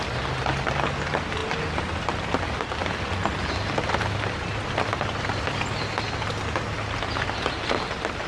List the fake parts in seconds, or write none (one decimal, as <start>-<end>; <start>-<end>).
none